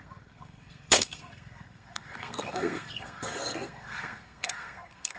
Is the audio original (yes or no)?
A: no